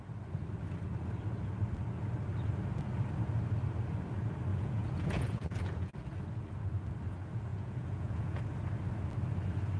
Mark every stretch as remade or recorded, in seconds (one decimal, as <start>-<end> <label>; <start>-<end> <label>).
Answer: 0.0-4.5 recorded; 4.5-5.9 remade; 5.9-7.5 recorded; 7.5-8.4 remade; 8.4-9.8 recorded

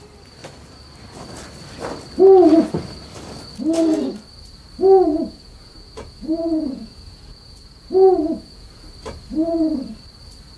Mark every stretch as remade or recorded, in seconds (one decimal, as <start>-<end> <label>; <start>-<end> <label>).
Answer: 0.0-5.1 recorded; 5.1-8.8 remade; 8.8-10.6 recorded

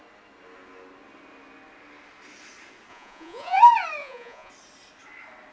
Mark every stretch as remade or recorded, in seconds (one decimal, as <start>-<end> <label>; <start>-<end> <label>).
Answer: 0.0-2.9 recorded; 2.9-3.6 remade; 3.6-4.0 recorded; 4.0-4.5 remade; 4.5-5.5 recorded

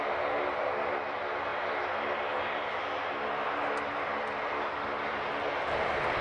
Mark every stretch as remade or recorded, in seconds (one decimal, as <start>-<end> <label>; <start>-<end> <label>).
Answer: 0.0-6.2 recorded

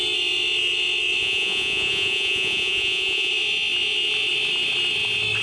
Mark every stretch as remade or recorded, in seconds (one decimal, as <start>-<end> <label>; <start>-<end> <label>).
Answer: 0.0-1.2 recorded; 1.2-3.3 remade; 3.3-5.4 recorded

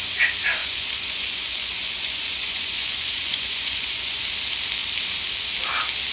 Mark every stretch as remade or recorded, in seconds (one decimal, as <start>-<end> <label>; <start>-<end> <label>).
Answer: 0.0-0.6 recorded; 0.6-4.2 remade; 4.2-6.1 recorded

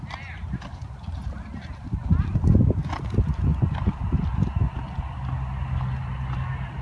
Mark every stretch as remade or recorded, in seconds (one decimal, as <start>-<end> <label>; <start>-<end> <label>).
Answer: 0.0-6.8 recorded

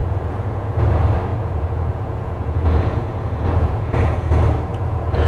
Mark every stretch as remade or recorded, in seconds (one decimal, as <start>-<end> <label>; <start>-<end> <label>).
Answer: 0.0-0.9 remade; 0.9-1.3 recorded; 1.3-4.3 remade; 4.3-4.7 recorded; 4.7-5.3 remade